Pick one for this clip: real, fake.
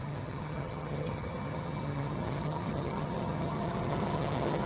fake